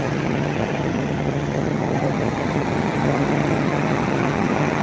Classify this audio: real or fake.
fake